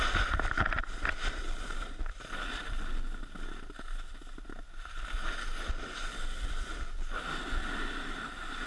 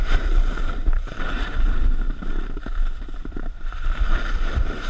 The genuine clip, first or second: first